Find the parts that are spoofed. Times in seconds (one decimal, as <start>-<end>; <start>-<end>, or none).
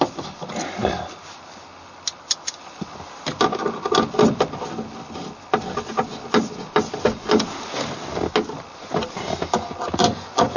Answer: 10.1-10.6